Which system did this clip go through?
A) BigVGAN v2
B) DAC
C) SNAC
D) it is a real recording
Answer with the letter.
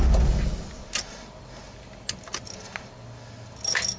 D